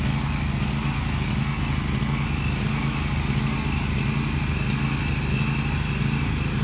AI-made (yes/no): no